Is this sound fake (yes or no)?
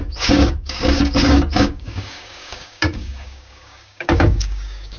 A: yes